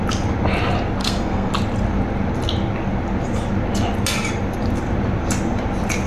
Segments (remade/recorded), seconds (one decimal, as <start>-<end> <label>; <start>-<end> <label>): 0.0-1.0 recorded; 1.0-1.5 remade; 1.5-6.1 recorded